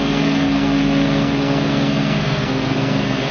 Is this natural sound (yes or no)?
no